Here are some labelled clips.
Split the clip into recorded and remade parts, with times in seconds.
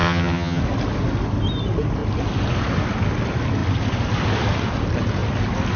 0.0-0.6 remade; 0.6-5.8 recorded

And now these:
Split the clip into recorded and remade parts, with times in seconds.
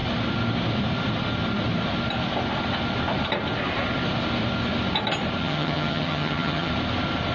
0.0-5.4 recorded; 5.4-6.7 remade; 6.7-7.3 recorded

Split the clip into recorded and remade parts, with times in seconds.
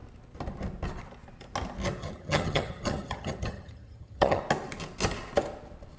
0.0-2.0 recorded; 2.0-4.4 remade; 4.4-6.0 recorded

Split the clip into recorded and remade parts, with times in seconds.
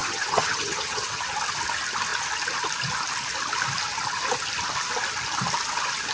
0.0-1.2 remade; 1.2-6.1 recorded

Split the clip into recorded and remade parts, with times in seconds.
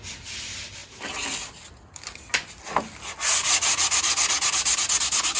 0.0-5.4 recorded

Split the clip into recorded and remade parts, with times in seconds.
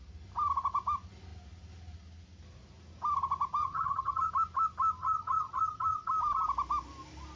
0.0-3.6 recorded; 3.6-4.3 remade; 4.3-5.0 recorded; 5.0-6.1 remade; 6.1-7.4 recorded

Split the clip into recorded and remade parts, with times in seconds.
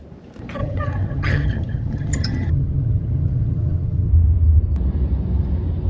0.0-0.6 recorded; 0.6-4.1 remade; 4.1-5.9 recorded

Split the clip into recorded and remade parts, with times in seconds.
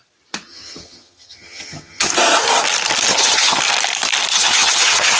0.0-0.5 recorded; 0.5-2.1 remade; 2.1-3.1 recorded; 3.1-3.6 remade; 3.6-4.3 recorded; 4.3-5.2 remade